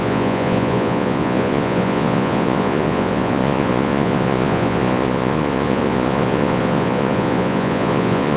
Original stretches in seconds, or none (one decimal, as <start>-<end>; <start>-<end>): none